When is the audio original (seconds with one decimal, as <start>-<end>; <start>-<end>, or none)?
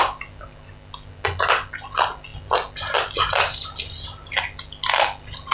0.0-5.5